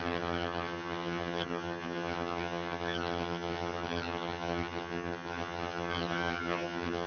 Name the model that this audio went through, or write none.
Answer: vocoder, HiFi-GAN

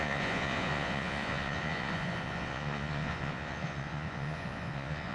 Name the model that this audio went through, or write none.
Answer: vocoder, Vocos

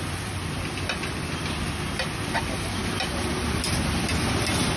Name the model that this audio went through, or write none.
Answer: none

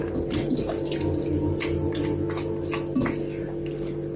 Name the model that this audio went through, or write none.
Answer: none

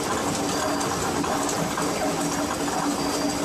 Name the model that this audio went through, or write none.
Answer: none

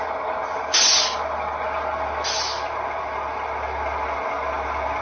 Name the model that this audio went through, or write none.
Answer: none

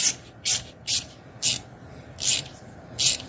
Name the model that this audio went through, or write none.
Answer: vocoder, BigVGAN v2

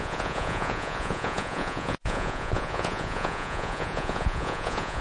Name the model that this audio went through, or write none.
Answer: vocoder, Vocos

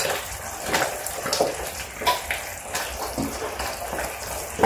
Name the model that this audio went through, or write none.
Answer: vocoder, BigVGAN v2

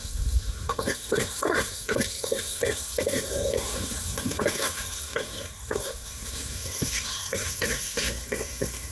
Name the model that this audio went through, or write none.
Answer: codec, SNAC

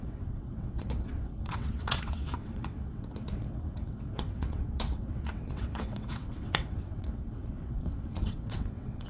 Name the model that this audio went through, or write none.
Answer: vocoder, WaveNeXt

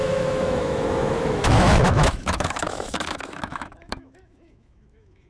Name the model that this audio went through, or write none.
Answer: autoencoder, DAC-VAE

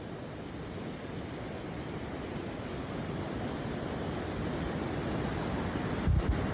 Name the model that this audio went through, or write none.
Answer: vocoder, BigVGAN v2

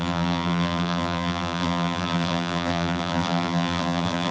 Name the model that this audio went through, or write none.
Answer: vocoder, BigVGAN v2